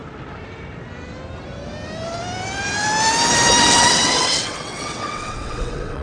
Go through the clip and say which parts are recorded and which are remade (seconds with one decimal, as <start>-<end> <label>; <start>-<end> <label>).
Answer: 0.0-3.6 recorded; 3.6-6.0 remade

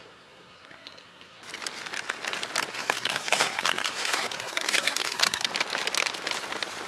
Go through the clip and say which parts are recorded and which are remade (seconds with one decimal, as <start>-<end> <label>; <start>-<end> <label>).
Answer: 0.0-1.4 remade; 1.4-2.7 recorded; 2.7-5.5 remade; 5.5-6.9 recorded